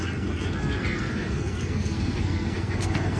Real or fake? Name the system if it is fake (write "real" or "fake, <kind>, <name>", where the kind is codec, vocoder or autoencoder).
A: fake, codec, SNAC